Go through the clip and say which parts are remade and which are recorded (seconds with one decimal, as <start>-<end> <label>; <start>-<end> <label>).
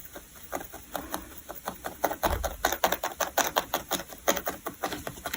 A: 0.0-3.2 remade; 3.2-5.4 recorded